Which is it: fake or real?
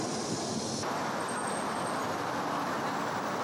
real